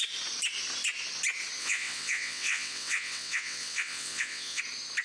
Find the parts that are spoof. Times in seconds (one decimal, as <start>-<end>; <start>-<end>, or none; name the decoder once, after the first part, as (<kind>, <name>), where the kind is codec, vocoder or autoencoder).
1.6-4.6 (vocoder, WaveNeXt)